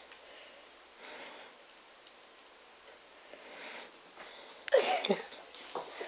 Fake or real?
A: real